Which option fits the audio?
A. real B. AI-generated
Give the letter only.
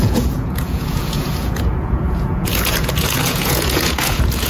B